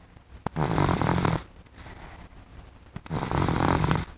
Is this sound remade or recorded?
recorded